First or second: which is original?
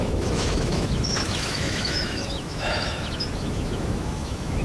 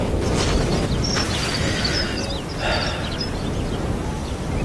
second